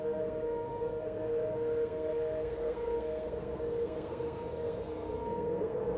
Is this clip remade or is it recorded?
remade